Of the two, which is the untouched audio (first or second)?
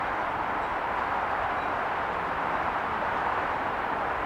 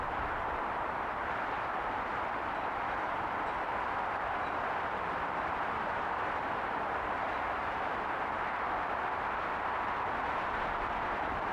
first